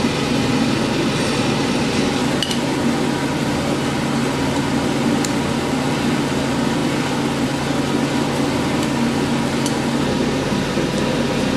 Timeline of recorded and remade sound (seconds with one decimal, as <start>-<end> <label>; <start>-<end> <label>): 0.0-11.6 recorded